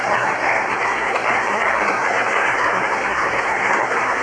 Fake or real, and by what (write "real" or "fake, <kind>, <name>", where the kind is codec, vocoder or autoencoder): fake, codec, SNAC